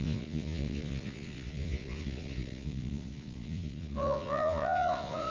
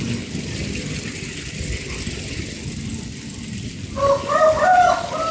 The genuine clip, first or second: second